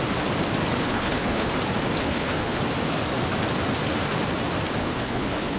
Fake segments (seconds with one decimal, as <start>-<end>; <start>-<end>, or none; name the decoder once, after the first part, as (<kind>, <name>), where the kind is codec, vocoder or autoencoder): 0.8-1.5 (codec, HILCodec); 2.0-2.6; 4.8-5.6